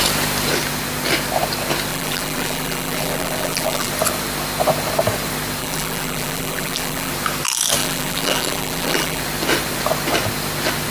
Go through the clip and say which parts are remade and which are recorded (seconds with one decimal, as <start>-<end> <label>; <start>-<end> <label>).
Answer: 0.0-1.9 recorded; 1.9-3.9 remade; 3.9-5.6 recorded; 5.6-7.1 remade; 7.1-7.8 recorded; 7.8-9.2 remade; 9.2-10.9 recorded